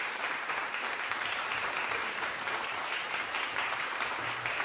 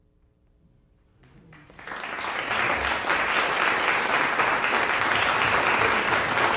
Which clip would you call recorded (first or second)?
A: second